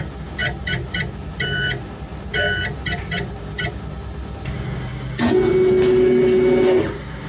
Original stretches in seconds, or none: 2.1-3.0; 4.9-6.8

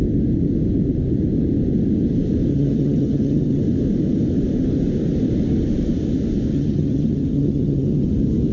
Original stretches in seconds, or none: 0.0-2.5; 3.6-6.5; 8.1-8.5

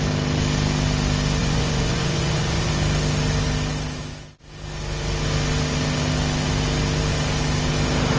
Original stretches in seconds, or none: 0.0-1.4; 2.7-8.2